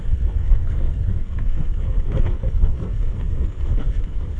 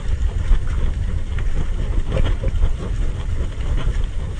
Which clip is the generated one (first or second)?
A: first